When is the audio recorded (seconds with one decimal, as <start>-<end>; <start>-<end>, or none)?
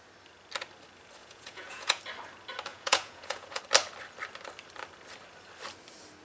0.0-1.2; 2.0-2.7; 3.6-6.2